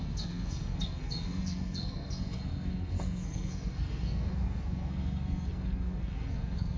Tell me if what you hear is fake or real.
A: fake